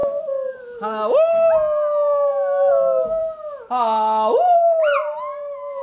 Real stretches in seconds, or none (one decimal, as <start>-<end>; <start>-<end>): 0.0-5.8